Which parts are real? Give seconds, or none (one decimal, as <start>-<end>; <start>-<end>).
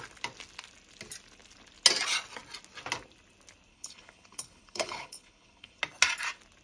0.0-3.7; 5.8-6.6